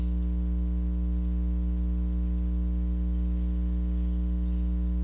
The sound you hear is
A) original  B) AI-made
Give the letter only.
A